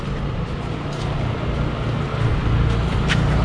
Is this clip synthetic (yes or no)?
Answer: no